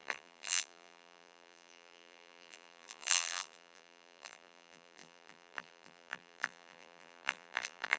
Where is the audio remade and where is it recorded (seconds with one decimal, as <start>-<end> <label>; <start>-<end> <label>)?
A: 0.0-8.0 remade